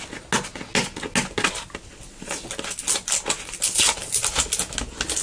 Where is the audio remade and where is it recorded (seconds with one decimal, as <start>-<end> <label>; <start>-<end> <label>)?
0.0-5.2 recorded